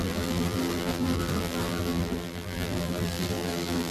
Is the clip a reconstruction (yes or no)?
yes